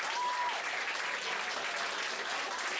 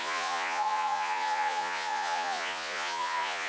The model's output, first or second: second